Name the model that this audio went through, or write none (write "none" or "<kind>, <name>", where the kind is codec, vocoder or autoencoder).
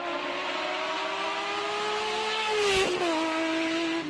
none